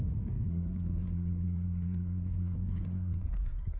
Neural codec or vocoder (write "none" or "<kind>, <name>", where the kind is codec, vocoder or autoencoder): codec, SNAC